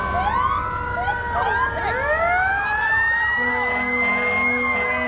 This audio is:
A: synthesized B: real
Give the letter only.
B